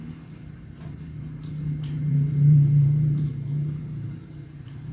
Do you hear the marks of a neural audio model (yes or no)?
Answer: yes